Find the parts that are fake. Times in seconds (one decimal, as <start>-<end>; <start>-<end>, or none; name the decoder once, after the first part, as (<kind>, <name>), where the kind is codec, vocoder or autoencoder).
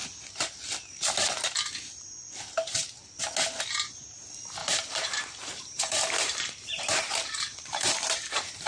4.6-6.8 (vocoder, BigVGAN v2); 7.5-8.7